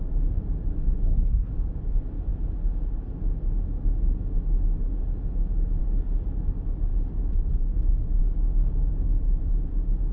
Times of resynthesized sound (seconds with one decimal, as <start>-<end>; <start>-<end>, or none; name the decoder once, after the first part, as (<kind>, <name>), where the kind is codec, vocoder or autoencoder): 8.2-8.9 (codec, DAC)